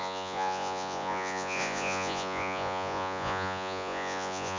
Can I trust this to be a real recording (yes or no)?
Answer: no